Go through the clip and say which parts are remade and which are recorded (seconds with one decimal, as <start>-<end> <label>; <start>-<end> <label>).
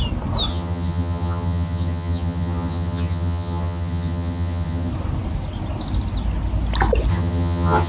0.0-0.5 recorded; 0.5-4.9 remade; 4.9-7.1 recorded; 7.1-7.9 remade